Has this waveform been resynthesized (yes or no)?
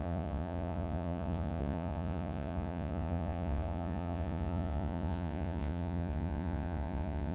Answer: yes